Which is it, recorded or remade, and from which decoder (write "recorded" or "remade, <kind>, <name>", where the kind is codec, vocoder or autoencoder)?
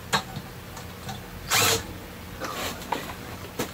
recorded